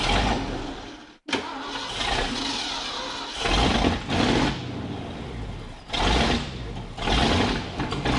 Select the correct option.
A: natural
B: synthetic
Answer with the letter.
A